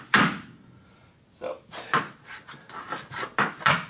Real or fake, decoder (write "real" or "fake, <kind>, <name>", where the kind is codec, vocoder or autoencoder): real